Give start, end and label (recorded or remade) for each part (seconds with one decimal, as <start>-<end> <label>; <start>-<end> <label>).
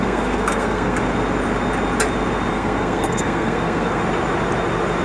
0.0-1.0 remade; 1.0-2.5 recorded; 2.5-4.0 remade; 4.0-5.0 recorded